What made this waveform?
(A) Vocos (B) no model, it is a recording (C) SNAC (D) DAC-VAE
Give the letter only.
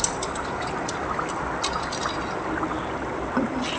B